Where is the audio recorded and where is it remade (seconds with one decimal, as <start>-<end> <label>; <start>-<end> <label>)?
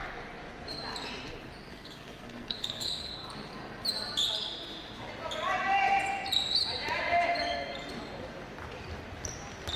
0.0-1.7 recorded; 1.7-3.1 remade; 3.1-9.8 recorded